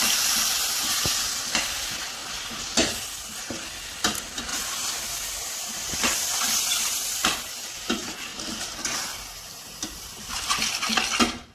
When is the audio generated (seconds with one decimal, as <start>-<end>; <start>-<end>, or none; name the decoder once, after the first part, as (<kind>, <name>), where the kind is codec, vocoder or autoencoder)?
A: 4.5-6.8 (vocoder, BigVGAN v2)